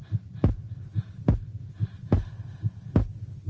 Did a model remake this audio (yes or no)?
no